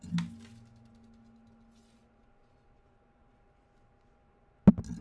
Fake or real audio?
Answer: real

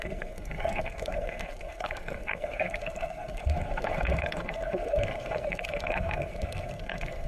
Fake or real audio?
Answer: fake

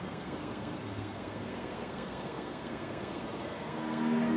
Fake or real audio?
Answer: fake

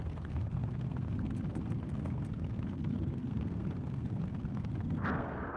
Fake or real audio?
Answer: fake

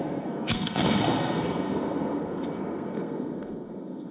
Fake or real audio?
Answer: fake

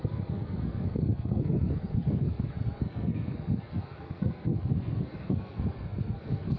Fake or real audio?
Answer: fake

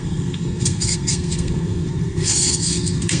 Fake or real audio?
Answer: fake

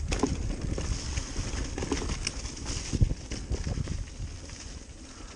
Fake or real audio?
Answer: real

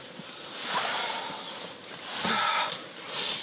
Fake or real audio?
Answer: real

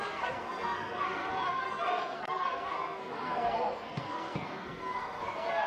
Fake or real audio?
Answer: fake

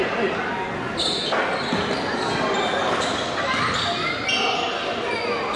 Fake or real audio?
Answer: real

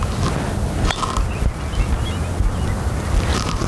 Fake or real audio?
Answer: real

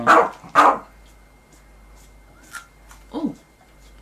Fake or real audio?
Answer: real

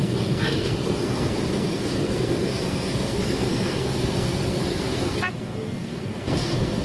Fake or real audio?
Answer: fake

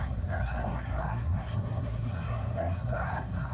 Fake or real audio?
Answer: fake